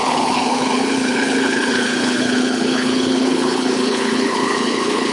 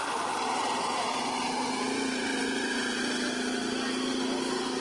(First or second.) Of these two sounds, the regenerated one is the first